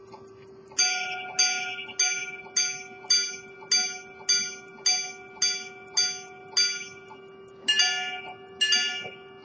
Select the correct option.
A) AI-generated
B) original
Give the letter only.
B